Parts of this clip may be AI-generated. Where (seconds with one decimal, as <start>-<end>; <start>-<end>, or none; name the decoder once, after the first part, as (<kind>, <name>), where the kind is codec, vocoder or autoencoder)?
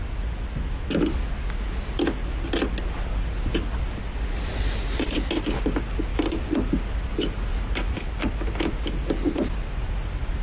6.1-6.7 (vocoder, BigVGAN v2)